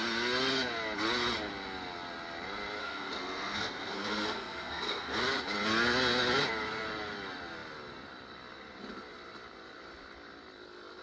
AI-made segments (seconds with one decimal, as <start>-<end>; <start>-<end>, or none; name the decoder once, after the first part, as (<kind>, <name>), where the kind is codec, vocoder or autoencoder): 2.8-5.2 (codec, SNAC)